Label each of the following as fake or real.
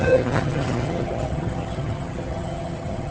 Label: fake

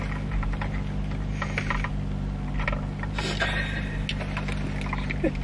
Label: real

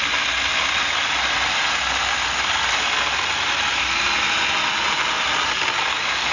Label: real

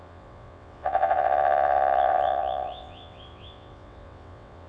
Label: fake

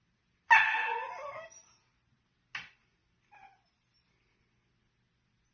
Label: real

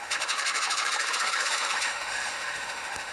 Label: fake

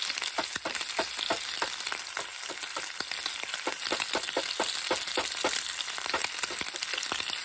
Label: real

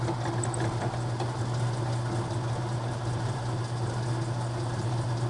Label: real